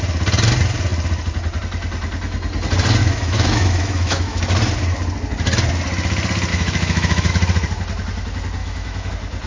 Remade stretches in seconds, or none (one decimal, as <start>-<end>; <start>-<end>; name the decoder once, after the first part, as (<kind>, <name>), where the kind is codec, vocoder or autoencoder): 3.0-4.4 (autoencoder, DAC-VAE); 6.5-7.3; 8.6-9.1